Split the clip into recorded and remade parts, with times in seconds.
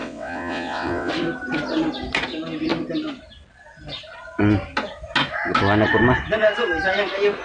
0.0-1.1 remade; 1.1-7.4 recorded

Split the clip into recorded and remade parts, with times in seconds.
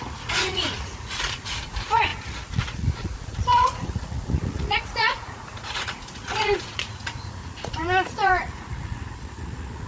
0.0-9.9 remade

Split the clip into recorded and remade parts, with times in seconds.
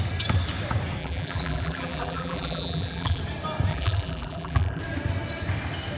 0.0-1.0 recorded; 1.0-3.2 remade; 3.2-3.7 recorded; 3.7-4.8 remade; 4.8-6.0 recorded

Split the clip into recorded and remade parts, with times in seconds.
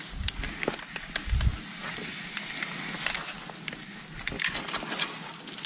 0.0-5.7 recorded